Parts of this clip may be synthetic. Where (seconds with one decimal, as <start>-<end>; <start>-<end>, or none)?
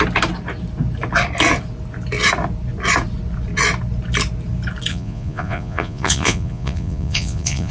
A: 4.9-7.7